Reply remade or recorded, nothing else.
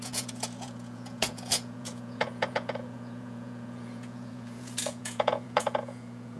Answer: remade